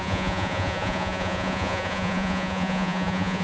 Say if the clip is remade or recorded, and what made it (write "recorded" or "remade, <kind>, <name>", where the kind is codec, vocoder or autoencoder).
remade, vocoder, Vocos